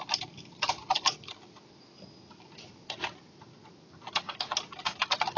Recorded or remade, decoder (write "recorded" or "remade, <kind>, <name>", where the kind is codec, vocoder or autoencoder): recorded